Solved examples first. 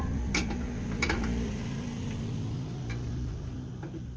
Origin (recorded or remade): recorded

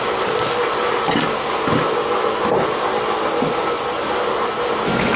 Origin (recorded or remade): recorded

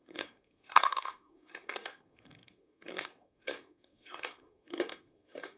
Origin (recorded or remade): remade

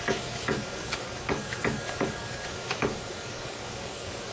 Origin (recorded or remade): remade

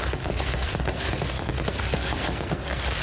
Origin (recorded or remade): remade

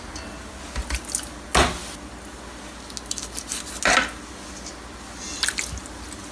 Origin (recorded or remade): recorded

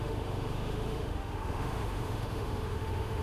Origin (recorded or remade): remade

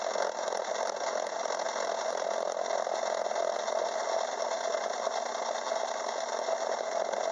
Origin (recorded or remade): recorded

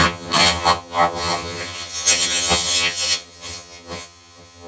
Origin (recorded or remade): remade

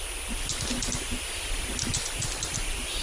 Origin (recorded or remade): recorded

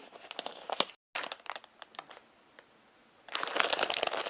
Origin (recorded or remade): recorded